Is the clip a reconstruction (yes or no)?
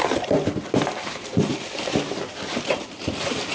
yes